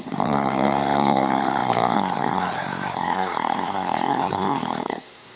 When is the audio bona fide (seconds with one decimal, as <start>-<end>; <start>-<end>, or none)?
none